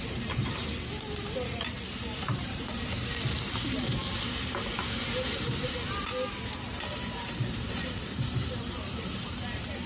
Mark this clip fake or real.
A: fake